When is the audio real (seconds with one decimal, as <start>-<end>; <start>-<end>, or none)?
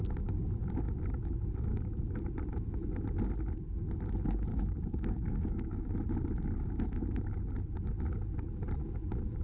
0.0-1.7; 2.2-4.5; 5.9-9.4